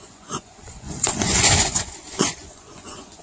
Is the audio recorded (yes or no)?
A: no